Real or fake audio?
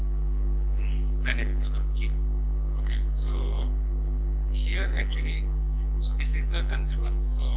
fake